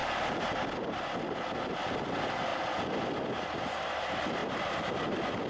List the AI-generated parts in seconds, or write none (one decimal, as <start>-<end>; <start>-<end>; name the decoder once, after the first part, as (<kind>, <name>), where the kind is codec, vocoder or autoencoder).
0.0-1.8 (vocoder, BigVGAN v2); 2.5-3.4